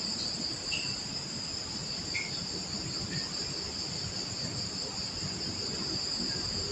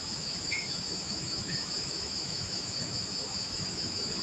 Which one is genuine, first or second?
first